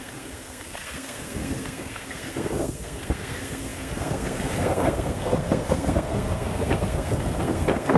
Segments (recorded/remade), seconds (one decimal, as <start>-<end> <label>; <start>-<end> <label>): 0.0-8.0 remade